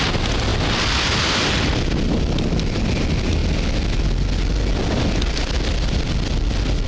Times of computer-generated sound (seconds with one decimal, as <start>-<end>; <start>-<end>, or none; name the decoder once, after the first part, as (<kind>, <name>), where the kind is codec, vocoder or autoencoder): none